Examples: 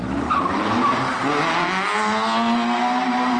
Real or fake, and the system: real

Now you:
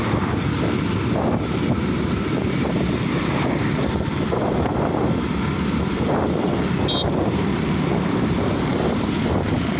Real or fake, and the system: fake, vocoder, BigVGAN v2